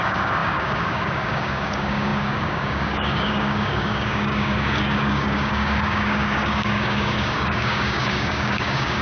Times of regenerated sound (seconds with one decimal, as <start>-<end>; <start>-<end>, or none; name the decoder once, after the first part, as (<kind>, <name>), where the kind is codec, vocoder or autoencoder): 0.0-9.0 (codec, DAC)